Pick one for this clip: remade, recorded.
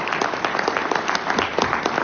recorded